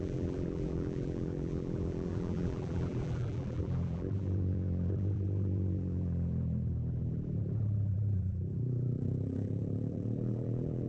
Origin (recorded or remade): remade